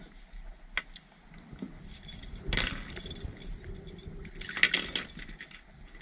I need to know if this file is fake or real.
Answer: real